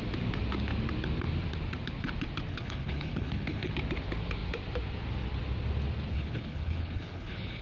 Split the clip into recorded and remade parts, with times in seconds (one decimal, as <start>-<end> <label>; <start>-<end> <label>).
0.0-2.5 recorded; 2.5-3.7 remade; 3.7-6.1 recorded; 6.1-7.6 remade